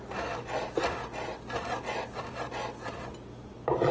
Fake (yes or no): no